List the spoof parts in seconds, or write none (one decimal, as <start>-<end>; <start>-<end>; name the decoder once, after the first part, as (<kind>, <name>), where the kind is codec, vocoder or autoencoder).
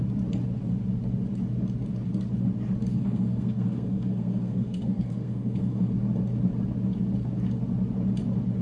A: 2.9-5.9 (codec, SNAC)